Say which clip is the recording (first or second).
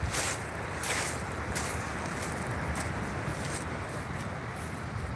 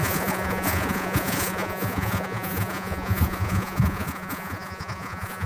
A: first